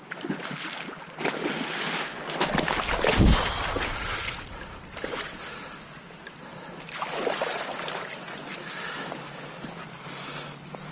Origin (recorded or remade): recorded